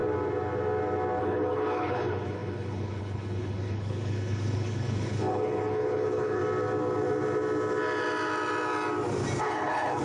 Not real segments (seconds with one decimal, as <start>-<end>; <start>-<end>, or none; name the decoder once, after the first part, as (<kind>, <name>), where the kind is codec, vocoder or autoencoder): 1.2-6.4 (codec, HILCodec); 9.4-10.0